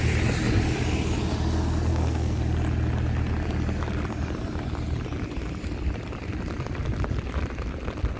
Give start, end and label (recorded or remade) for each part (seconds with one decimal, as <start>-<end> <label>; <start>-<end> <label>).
0.0-1.9 recorded; 1.9-2.4 remade; 2.4-8.2 recorded